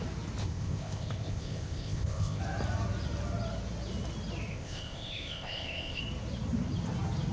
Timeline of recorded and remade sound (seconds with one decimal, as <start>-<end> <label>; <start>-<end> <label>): 0.0-0.4 recorded; 0.4-2.4 remade; 2.4-4.5 recorded; 4.5-6.0 remade; 6.0-7.3 recorded